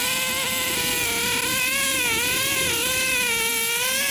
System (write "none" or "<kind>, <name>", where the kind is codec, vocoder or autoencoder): none